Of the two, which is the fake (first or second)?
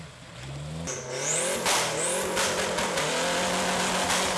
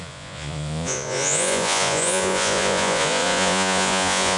second